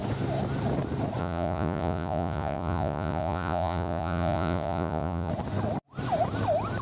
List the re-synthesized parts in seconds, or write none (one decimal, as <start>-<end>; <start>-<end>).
1.2-5.3